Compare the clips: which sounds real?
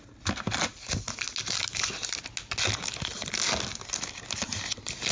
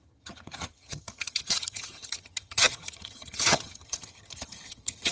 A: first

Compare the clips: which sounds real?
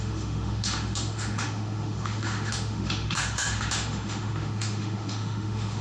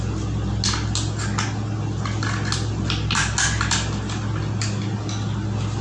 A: second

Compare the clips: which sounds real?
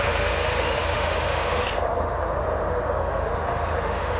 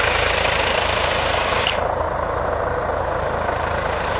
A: second